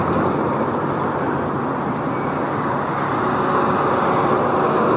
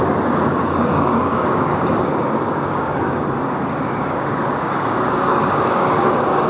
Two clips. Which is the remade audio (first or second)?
second